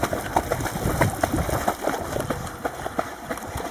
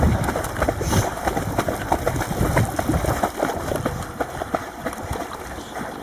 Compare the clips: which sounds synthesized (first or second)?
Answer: second